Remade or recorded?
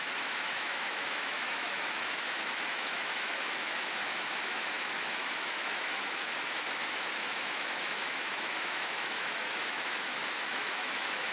remade